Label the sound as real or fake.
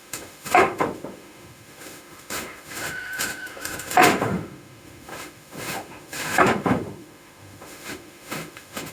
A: fake